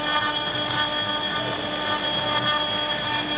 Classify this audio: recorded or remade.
recorded